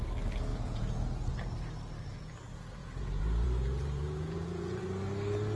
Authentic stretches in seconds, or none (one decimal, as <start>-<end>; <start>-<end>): 0.0-0.5; 1.3-2.8; 4.8-5.6